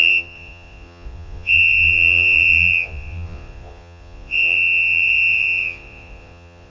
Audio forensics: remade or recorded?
remade